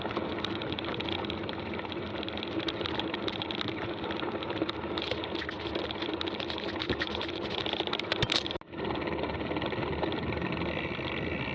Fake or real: real